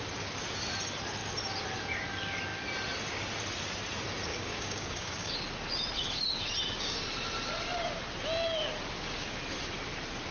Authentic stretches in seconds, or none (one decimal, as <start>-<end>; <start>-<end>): 0.0-4.3; 5.3-10.3